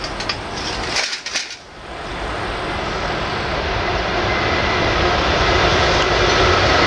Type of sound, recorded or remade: recorded